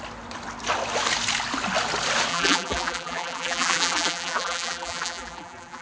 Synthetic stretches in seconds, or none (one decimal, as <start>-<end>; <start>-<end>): 2.3-5.8